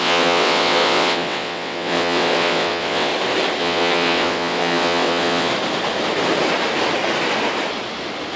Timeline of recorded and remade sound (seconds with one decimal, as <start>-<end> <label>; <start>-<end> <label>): 0.0-3.1 remade; 3.1-3.6 recorded; 3.6-5.5 remade; 5.5-8.4 recorded